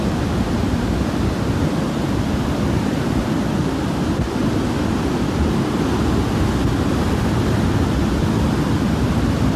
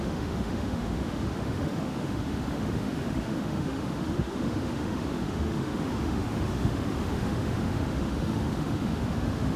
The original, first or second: first